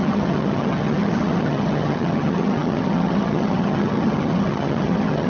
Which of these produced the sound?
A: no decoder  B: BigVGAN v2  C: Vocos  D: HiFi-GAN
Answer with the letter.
D